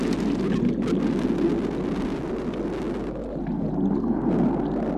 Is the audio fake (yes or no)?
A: no